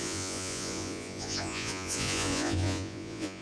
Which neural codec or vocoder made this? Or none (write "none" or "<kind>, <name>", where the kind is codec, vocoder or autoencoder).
vocoder, Vocos